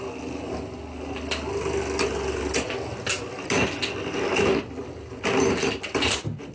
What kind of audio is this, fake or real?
real